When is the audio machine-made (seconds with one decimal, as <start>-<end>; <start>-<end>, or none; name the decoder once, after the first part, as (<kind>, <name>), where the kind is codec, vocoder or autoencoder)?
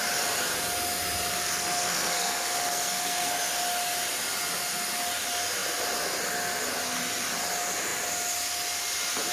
1.3-3.5 (codec, SNAC)